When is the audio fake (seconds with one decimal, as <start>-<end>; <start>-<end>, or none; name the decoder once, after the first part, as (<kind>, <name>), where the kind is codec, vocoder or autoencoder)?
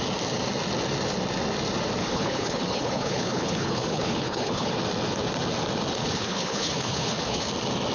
2.0-4.7 (codec, HILCodec); 6.0-7.5